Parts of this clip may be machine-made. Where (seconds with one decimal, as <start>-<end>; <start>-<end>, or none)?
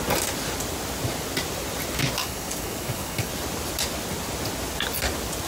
2.2-3.3